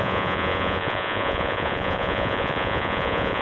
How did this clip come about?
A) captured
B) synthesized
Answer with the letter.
B